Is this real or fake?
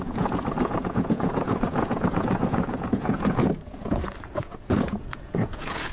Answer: fake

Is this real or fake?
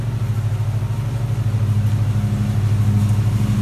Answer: real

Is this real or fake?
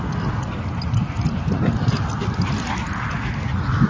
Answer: real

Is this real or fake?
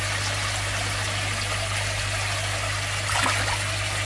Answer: real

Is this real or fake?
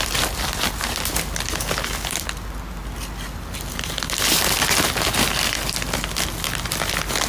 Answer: real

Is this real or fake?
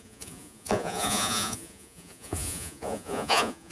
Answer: fake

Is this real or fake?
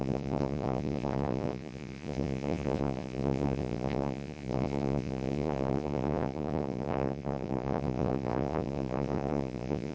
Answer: fake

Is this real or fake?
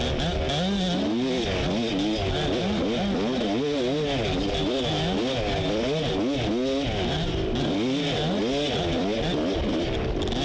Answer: real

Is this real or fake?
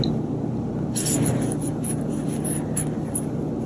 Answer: real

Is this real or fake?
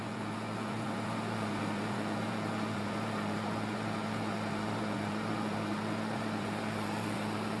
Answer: fake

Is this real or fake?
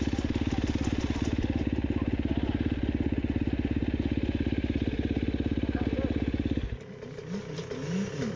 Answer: real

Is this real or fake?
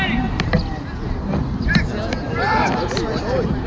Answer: real